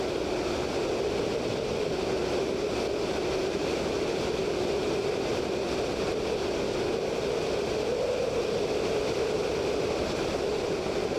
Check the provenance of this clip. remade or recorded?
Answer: recorded